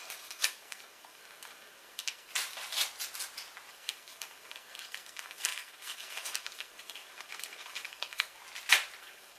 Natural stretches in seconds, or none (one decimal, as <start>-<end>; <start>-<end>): 2.3-3.7; 8.4-9.0